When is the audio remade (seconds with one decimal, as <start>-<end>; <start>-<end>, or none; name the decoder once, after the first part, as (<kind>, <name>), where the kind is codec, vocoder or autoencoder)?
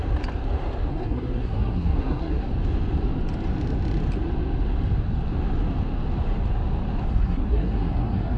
0.9-2.5 (codec, SNAC); 7.1-8.4